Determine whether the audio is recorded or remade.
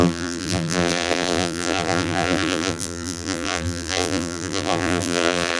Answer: remade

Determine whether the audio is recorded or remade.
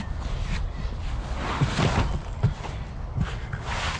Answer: recorded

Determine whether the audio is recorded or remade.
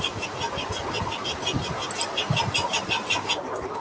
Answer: recorded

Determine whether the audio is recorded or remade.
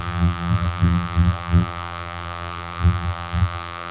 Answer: remade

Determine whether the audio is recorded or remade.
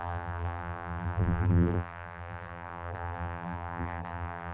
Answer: remade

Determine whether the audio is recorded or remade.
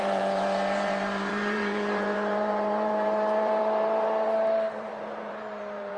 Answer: remade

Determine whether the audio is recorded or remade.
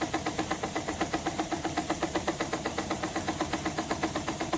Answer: remade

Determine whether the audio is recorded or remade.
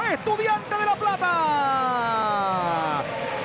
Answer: recorded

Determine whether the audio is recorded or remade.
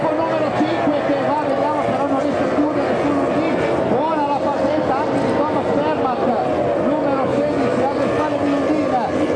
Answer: recorded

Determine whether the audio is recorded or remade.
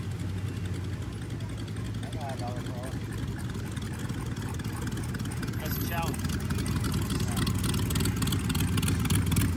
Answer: recorded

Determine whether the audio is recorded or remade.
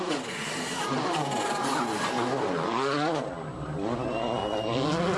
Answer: recorded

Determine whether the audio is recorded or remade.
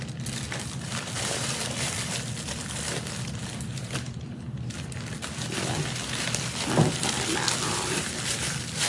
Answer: remade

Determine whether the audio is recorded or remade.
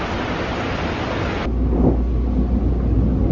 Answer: recorded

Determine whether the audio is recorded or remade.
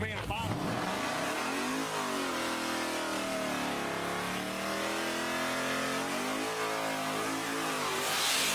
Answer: recorded